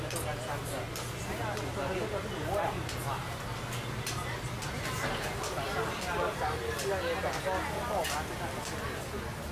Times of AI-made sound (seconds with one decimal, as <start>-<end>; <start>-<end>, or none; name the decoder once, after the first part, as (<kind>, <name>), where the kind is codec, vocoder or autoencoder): none